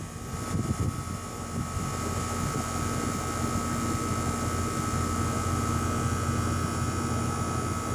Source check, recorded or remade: recorded